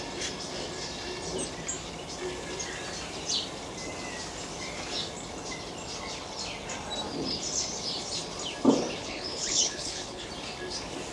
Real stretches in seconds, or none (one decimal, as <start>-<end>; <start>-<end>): 0.0-9.0; 10.3-11.1